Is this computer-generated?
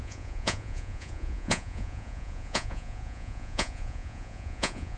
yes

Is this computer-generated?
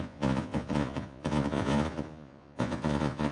yes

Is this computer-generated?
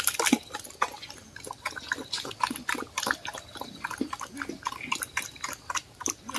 no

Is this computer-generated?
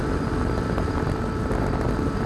no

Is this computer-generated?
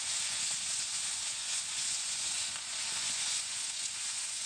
yes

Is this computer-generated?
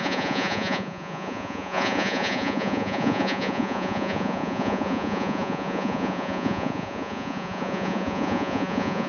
yes